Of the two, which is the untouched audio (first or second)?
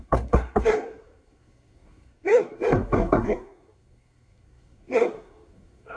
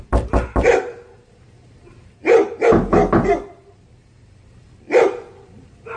second